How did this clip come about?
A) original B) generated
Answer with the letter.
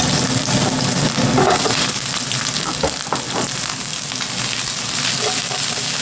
A